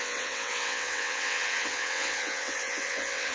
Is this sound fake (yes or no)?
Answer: yes